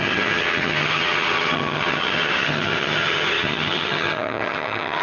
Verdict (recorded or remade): remade